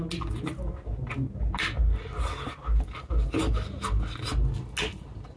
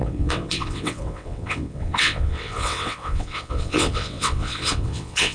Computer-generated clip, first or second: second